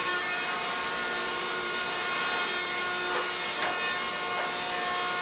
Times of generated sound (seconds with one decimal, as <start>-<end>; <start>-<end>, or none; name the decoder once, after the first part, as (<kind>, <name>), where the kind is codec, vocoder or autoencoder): 0.0-2.8 (vocoder, BigVGAN v2)